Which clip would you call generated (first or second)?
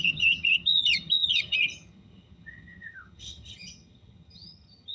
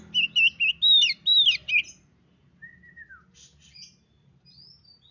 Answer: first